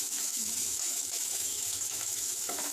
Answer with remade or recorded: remade